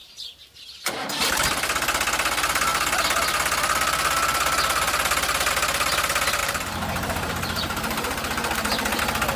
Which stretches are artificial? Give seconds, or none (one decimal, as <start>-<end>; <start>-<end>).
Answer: 0.0-1.3; 6.4-9.0